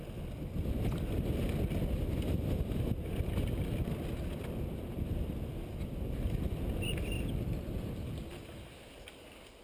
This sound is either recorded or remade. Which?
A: recorded